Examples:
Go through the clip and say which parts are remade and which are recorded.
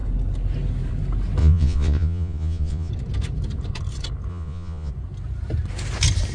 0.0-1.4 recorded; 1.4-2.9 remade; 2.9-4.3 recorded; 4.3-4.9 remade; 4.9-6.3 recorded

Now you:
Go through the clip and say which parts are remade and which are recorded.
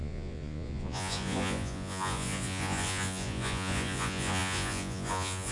0.0-5.5 remade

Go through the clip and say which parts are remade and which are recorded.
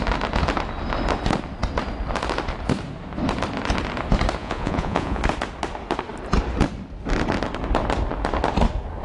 0.0-4.4 recorded; 4.4-5.2 remade; 5.2-9.0 recorded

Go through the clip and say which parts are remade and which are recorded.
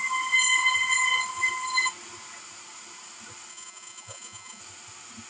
0.0-3.5 recorded; 3.5-4.6 remade; 4.6-5.3 recorded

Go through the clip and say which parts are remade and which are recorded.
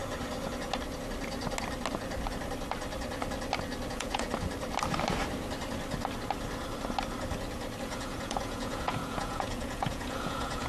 0.0-3.9 recorded; 3.9-4.3 remade; 4.3-7.8 recorded; 7.8-10.7 remade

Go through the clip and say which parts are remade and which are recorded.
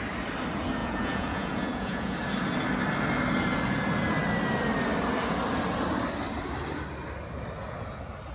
0.0-0.8 recorded; 0.8-2.2 remade; 2.2-8.3 recorded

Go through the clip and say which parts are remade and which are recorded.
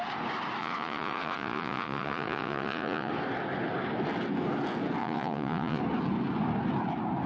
0.0-0.6 recorded; 0.6-3.1 remade; 3.1-5.0 recorded; 5.0-5.8 remade; 5.8-7.3 recorded